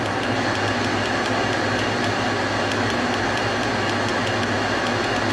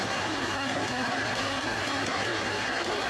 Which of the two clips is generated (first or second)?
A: second